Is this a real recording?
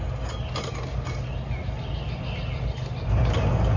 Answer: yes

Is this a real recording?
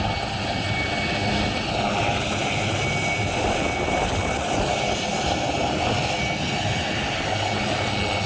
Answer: yes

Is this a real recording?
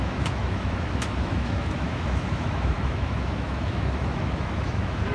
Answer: no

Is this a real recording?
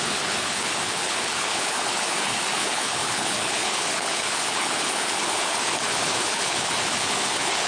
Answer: no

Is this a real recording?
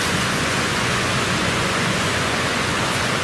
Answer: no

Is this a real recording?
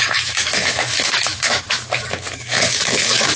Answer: no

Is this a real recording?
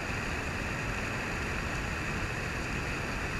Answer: yes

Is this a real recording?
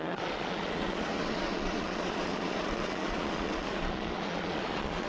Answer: no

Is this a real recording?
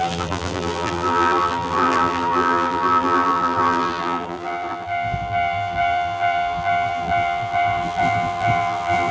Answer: no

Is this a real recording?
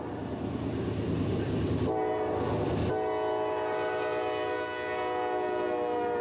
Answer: yes